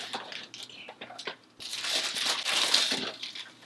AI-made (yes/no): no